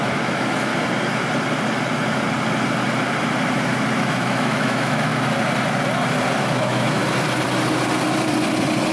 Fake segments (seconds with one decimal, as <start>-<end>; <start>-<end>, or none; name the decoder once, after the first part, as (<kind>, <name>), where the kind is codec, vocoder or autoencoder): 0.0-0.7 (autoencoder, DAC-VAE); 4.0-5.1; 6.4-7.0